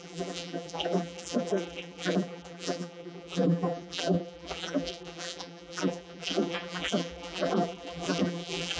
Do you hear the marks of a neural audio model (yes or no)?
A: yes